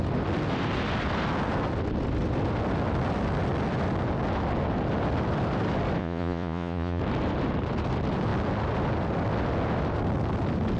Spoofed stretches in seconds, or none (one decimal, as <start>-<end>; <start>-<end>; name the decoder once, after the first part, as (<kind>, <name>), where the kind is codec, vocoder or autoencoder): 6.0-7.0 (vocoder, Vocos)